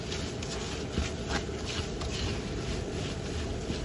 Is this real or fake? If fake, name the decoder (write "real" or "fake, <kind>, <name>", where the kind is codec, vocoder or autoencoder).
real